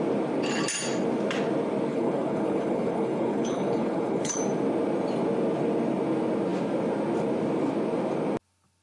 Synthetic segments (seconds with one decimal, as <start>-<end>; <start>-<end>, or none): 1.9-4.4